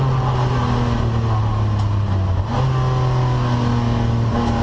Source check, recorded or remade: recorded